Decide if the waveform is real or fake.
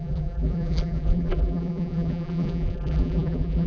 fake